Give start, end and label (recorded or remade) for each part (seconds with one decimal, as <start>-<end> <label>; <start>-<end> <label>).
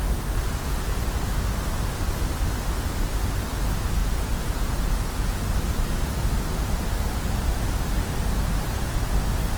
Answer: 0.0-4.0 recorded; 4.0-5.4 remade; 5.4-9.6 recorded